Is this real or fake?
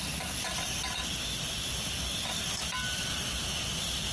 real